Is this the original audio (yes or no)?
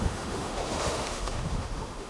no